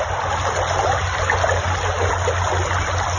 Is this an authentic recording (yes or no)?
yes